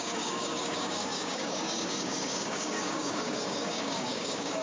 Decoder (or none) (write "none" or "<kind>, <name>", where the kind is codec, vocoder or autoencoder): codec, DAC